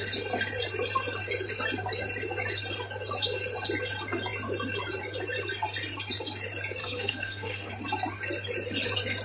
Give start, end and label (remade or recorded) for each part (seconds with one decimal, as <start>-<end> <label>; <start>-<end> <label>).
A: 0.0-6.8 recorded; 6.8-7.7 remade; 7.7-9.2 recorded